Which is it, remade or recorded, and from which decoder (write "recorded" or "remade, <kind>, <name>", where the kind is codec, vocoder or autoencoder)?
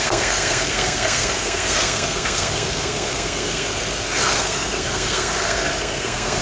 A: remade, codec, SNAC